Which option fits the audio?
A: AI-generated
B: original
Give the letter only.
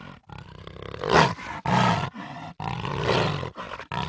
B